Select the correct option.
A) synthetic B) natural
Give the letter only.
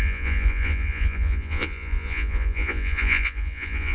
A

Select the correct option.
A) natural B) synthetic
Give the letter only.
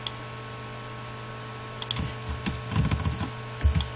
A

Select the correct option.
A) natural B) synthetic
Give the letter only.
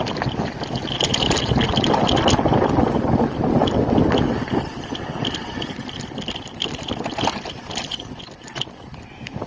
A